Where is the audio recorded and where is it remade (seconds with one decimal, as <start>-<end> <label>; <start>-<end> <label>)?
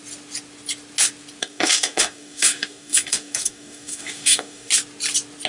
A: 0.0-1.4 recorded; 1.4-4.7 remade; 4.7-5.5 recorded